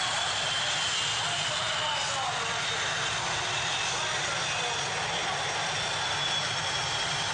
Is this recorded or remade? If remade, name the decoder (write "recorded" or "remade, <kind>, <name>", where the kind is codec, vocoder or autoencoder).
recorded